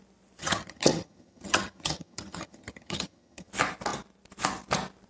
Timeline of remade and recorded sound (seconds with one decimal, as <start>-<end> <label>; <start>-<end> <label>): 0.0-0.4 recorded; 0.4-3.5 remade; 3.5-5.1 recorded